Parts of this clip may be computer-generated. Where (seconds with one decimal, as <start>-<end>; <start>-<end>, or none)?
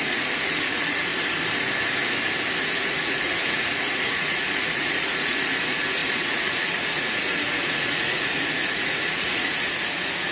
0.0-1.1; 2.6-10.3